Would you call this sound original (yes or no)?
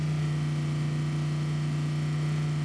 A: yes